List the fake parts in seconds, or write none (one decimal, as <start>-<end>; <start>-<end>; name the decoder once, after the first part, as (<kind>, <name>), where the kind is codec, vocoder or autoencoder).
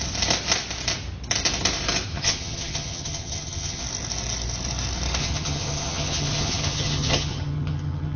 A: 2.1-3.8 (vocoder, HiFi-GAN); 5.2-8.2